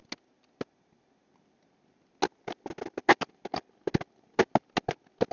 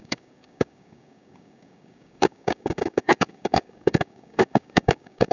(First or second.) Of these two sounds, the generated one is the second